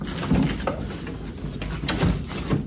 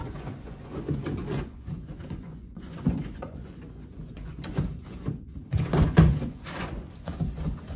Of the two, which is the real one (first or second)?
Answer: first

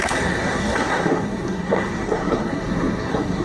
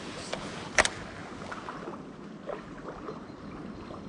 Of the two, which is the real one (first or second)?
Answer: second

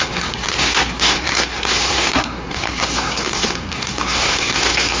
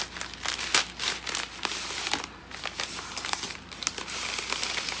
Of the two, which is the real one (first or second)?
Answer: second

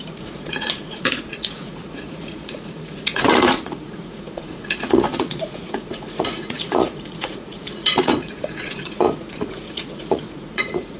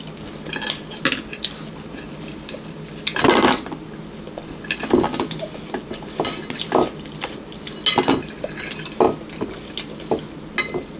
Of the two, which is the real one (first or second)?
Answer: second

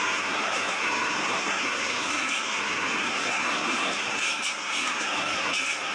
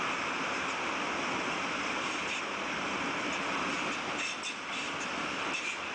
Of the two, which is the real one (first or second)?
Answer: second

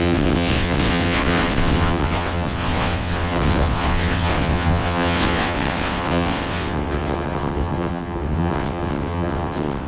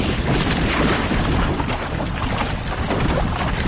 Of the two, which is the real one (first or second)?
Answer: second